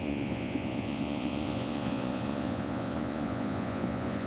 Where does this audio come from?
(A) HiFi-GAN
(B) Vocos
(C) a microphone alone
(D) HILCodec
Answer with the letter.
B